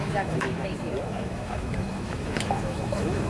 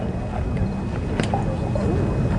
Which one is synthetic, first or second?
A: first